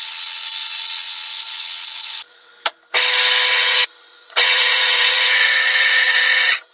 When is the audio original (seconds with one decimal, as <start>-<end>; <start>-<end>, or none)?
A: 2.5-3.5